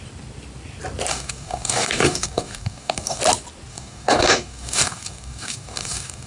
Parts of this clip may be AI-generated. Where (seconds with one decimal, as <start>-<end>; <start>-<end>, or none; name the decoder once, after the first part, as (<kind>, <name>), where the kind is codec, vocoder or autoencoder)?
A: 1.1-3.2 (codec, DAC); 3.7-6.3